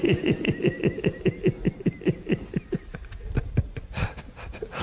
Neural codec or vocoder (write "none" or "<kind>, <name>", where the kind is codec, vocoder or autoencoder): none